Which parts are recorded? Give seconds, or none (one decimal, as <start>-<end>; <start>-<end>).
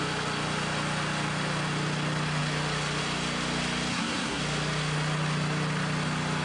0.0-3.9; 4.4-6.4